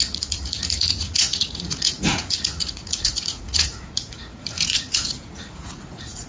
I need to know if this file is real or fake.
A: fake